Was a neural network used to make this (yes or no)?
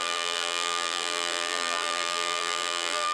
yes